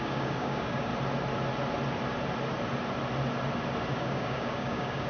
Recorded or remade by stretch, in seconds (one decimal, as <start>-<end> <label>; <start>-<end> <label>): 0.0-0.9 remade; 0.9-3.9 recorded; 3.9-5.1 remade